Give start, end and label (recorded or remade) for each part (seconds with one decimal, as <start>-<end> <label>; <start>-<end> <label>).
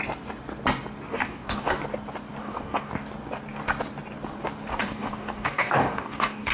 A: 0.0-1.1 recorded; 1.1-1.7 remade; 1.7-2.4 recorded; 2.4-2.9 remade; 2.9-4.7 recorded; 4.7-6.5 remade